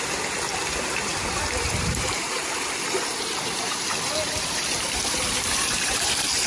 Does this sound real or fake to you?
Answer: fake